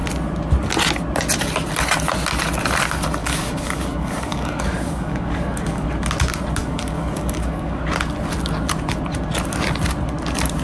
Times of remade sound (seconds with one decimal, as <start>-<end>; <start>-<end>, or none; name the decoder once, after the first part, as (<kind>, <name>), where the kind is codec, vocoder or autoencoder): 3.2-5.9 (codec, DAC); 6.6-7.8